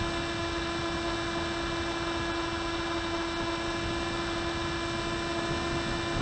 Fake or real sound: real